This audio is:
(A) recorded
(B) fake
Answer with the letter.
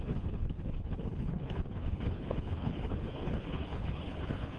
B